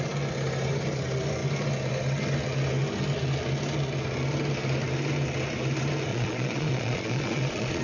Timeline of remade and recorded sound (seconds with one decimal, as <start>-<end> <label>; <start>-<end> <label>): 0.0-6.1 recorded; 6.1-7.8 remade

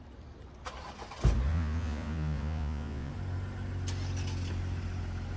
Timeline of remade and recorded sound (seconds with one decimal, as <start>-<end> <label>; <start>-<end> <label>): 0.0-1.5 recorded; 1.5-3.1 remade; 3.1-5.4 recorded